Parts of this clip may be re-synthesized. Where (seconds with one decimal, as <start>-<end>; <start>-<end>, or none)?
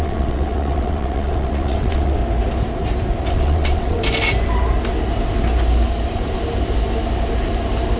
0.0-2.2; 3.3-4.0